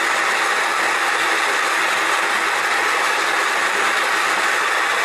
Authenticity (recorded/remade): recorded